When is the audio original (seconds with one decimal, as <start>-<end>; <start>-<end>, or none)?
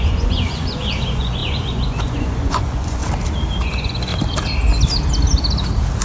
3.0-3.6; 4.1-6.0